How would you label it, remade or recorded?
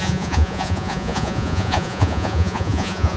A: remade